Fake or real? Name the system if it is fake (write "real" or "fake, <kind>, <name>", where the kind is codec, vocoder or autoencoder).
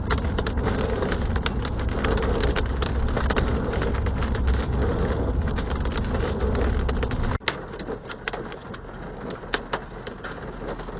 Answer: real